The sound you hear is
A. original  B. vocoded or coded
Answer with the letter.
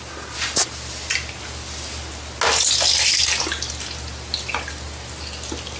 A